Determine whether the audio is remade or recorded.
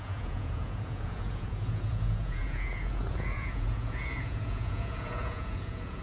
remade